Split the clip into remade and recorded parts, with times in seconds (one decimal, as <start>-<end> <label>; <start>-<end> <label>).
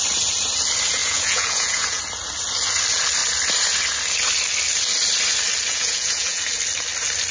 0.0-1.0 recorded; 1.0-2.0 remade; 2.0-5.7 recorded; 5.7-6.4 remade; 6.4-7.3 recorded